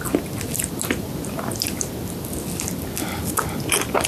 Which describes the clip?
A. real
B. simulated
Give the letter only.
A